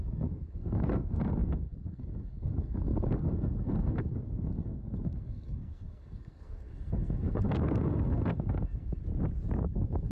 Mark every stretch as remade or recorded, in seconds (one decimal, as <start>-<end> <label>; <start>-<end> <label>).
0.0-9.0 remade; 9.0-9.6 recorded; 9.6-10.1 remade